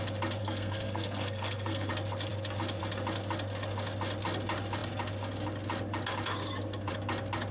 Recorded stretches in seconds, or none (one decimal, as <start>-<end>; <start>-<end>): 0.0-0.4; 1.9-7.5